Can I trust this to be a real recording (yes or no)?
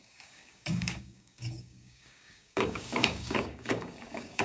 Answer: no